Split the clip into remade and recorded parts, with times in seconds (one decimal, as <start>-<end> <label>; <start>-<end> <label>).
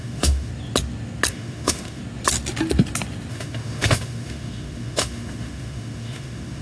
0.0-0.5 remade; 0.5-1.3 recorded; 1.3-2.0 remade; 2.0-3.3 recorded; 3.3-6.6 remade